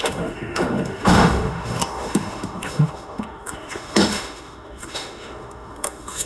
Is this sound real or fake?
fake